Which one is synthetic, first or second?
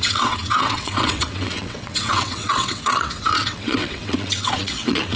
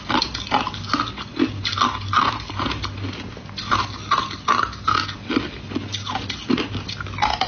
first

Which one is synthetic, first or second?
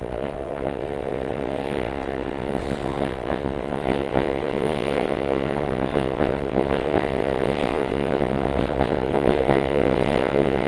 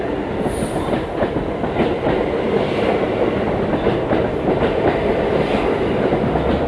first